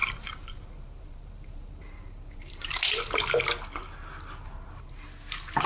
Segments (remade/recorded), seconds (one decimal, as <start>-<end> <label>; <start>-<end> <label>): 0.0-3.4 remade; 3.4-5.7 recorded